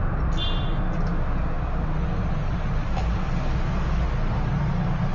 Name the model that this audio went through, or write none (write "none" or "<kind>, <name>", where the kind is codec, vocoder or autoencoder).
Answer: none